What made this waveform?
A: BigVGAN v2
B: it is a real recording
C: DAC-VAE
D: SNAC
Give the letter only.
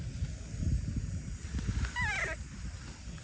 B